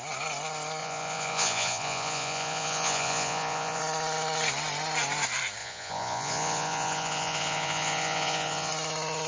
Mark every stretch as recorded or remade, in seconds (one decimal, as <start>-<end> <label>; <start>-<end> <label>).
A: 0.0-0.8 recorded; 0.8-3.8 remade; 3.8-5.6 recorded; 5.6-8.7 remade; 8.7-9.3 recorded